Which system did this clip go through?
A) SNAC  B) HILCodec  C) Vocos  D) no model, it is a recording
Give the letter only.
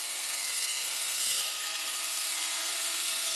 A